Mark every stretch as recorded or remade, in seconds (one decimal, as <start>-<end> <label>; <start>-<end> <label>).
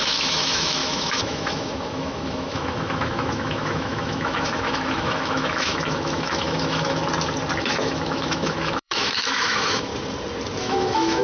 0.0-7.0 remade; 7.0-7.6 recorded; 7.6-9.9 remade; 9.9-10.6 recorded; 10.6-11.2 remade